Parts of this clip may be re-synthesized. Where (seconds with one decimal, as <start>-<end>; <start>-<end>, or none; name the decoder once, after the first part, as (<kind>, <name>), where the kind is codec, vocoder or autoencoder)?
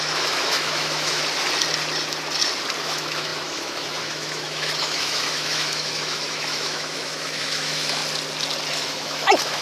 0.0-1.2 (autoencoder, DAC-VAE); 2.8-8.0; 8.7-9.6